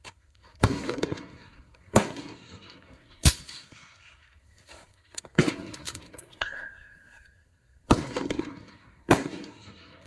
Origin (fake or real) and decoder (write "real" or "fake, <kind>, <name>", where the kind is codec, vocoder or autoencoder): fake, codec, SNAC